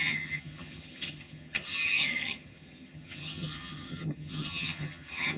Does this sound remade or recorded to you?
remade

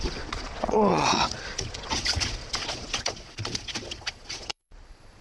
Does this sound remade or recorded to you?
remade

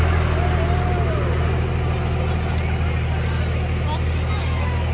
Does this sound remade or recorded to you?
recorded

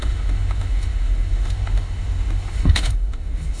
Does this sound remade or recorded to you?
remade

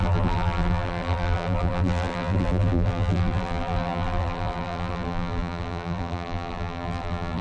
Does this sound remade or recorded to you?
remade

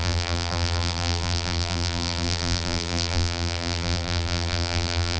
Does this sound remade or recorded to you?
remade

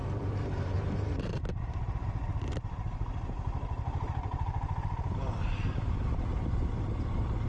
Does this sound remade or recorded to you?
remade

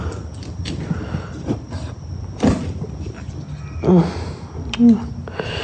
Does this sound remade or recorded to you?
recorded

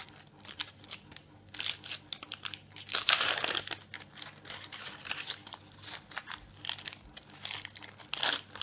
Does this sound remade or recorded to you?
recorded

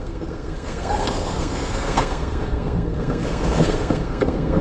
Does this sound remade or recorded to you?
remade